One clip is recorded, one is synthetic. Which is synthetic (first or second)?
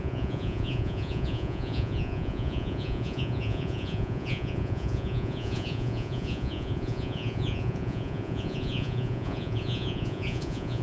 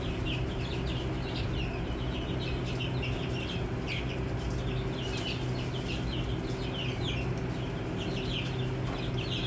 first